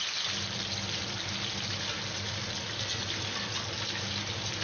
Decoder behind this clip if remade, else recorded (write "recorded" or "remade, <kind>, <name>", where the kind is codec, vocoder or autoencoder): recorded